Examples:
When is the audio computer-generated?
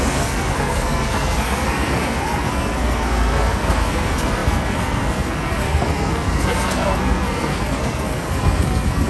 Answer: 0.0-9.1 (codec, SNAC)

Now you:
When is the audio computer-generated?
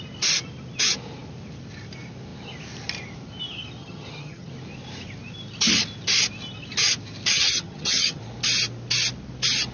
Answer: 3.8-4.5 (vocoder, HiFi-GAN); 7.3-8.2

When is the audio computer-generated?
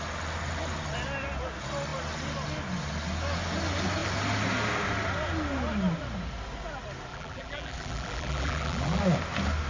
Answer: 7.1-9.0 (vocoder, BigVGAN v2)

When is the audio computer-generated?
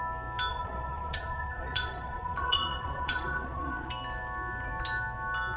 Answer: 0.5-3.9 (vocoder, Vocos)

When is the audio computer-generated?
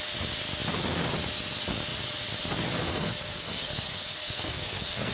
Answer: 2.9-5.1 (codec, SNAC)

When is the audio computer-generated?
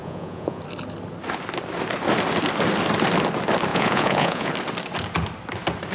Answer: 0.0-0.6 (vocoder, Vocos); 3.7-4.5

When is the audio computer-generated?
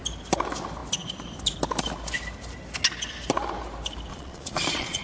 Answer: 4.1-5.0 (vocoder, Vocos)